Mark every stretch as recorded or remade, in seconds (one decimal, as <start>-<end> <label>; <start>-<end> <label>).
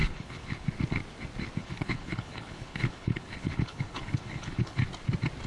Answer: 0.0-0.7 remade; 0.7-1.6 recorded; 1.6-4.9 remade; 4.9-5.5 recorded